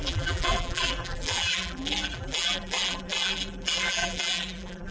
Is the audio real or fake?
fake